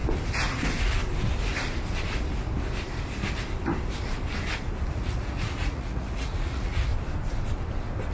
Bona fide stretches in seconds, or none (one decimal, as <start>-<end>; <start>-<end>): 0.0-4.9; 6.9-8.1